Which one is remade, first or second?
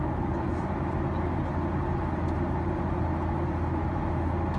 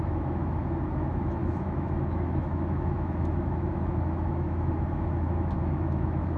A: second